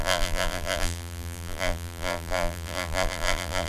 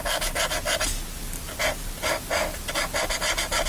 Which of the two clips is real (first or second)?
second